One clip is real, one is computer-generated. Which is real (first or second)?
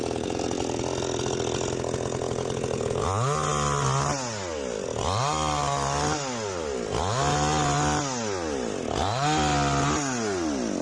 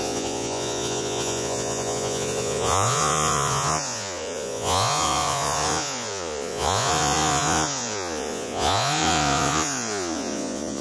first